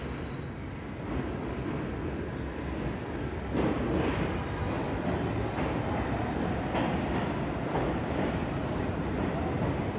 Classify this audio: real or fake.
real